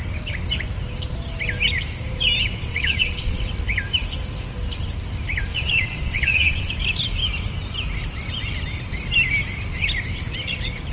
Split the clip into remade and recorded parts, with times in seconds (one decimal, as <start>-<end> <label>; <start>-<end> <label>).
0.0-2.7 recorded; 2.7-3.4 remade; 3.4-5.5 recorded; 5.5-6.7 remade; 6.7-10.9 recorded

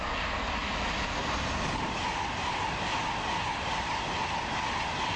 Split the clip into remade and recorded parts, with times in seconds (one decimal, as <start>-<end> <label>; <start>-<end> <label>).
0.0-5.2 recorded

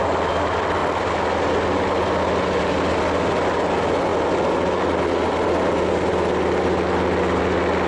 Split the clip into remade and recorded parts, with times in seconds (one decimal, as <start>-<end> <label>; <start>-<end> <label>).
0.0-7.9 recorded

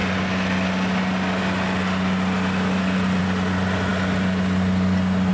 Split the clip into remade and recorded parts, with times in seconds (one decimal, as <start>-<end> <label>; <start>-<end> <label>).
0.0-5.3 recorded

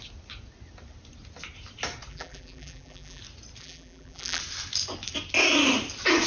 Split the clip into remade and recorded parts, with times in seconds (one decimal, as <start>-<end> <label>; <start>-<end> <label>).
0.0-2.1 recorded; 2.1-3.2 remade; 3.2-3.6 recorded; 3.6-4.4 remade; 4.4-6.3 recorded

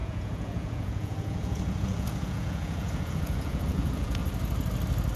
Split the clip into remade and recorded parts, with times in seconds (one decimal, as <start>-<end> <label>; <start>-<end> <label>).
0.0-4.2 remade; 4.2-5.2 recorded